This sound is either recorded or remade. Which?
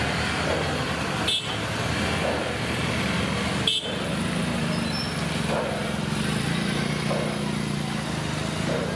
recorded